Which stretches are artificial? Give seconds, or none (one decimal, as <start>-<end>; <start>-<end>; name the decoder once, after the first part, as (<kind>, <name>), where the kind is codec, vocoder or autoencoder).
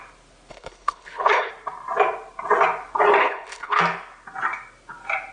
0.5-1.5 (codec, HILCodec); 3.2-3.8